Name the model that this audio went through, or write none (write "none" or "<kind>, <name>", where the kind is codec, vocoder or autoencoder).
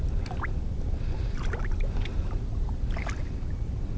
none